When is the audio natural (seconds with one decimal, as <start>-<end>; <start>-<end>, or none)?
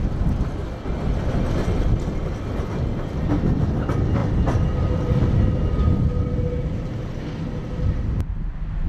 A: 0.0-8.9